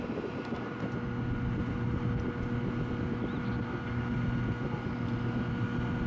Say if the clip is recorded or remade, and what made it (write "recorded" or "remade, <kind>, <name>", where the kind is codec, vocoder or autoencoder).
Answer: recorded